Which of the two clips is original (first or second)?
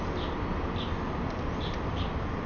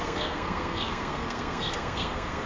first